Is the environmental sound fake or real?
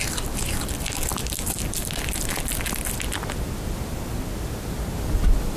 real